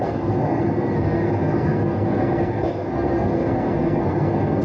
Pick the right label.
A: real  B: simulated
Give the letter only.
B